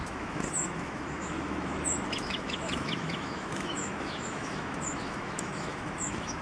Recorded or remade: remade